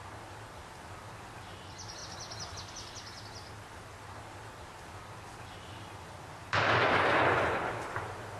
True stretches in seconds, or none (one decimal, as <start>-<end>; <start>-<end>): 0.0-7.1; 7.7-8.4